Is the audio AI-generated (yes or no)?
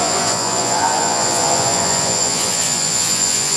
yes